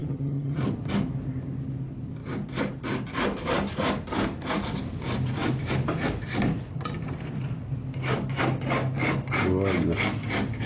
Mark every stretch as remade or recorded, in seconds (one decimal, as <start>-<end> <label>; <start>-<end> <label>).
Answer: 0.0-0.6 remade; 0.6-10.7 recorded

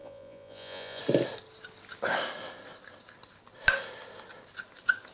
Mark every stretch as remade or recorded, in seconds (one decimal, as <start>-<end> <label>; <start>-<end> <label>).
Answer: 0.0-1.0 remade; 1.0-5.1 recorded

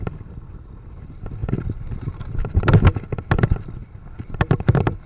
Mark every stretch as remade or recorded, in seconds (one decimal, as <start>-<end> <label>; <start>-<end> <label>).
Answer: 0.0-1.4 recorded; 1.4-2.8 remade; 2.8-3.8 recorded; 3.8-5.1 remade

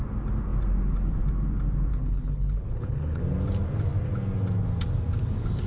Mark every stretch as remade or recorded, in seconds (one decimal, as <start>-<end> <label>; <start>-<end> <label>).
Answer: 0.0-1.9 recorded; 1.9-3.2 remade; 3.2-5.7 recorded

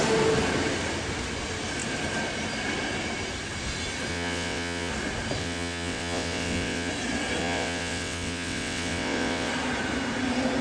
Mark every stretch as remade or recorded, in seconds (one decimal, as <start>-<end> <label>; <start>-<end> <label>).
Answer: 0.0-4.1 recorded; 4.1-4.9 remade; 4.9-5.4 recorded; 5.4-6.9 remade; 6.9-7.4 recorded; 7.4-9.5 remade; 9.5-10.6 recorded

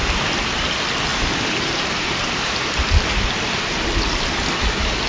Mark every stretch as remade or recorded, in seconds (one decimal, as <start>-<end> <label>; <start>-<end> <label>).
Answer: 0.0-1.1 recorded; 1.1-4.2 remade; 4.2-5.1 recorded

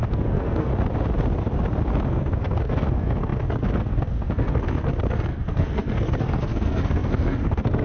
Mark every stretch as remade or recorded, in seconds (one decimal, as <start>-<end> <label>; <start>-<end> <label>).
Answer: 0.0-0.7 remade; 0.7-2.1 recorded; 2.1-7.8 remade

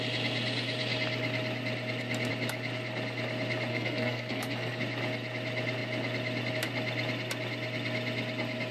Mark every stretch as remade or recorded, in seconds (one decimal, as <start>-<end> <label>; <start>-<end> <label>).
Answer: 0.0-3.7 recorded; 3.7-4.8 remade; 4.8-8.7 recorded